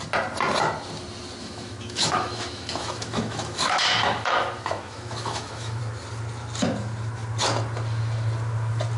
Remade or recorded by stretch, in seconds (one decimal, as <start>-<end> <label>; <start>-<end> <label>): 0.0-1.4 recorded; 1.4-5.8 remade; 5.8-9.0 recorded